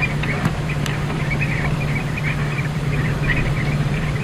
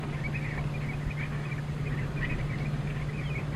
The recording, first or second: second